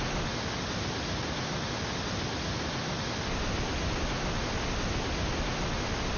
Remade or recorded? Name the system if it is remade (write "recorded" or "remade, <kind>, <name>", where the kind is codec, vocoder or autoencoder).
recorded